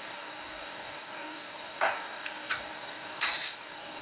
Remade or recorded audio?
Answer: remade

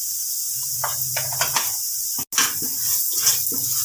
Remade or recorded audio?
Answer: recorded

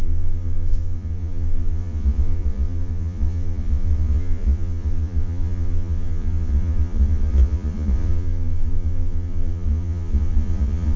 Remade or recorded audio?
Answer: remade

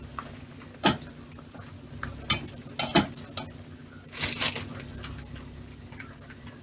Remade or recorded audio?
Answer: recorded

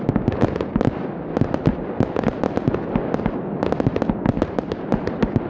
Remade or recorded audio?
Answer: recorded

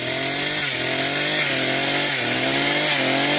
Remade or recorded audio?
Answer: recorded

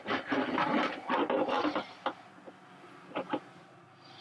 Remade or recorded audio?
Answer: recorded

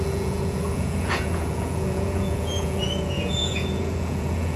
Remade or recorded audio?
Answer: remade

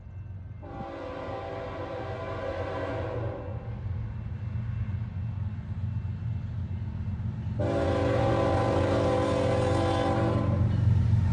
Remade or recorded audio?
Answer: recorded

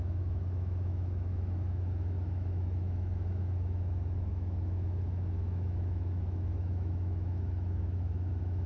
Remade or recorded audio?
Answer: remade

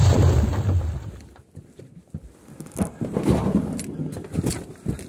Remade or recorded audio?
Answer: recorded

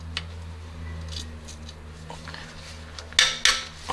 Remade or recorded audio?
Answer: recorded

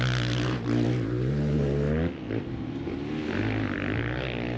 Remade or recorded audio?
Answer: recorded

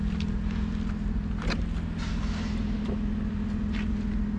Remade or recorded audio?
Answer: recorded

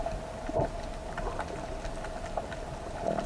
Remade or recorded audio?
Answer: recorded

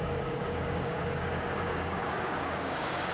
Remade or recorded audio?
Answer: remade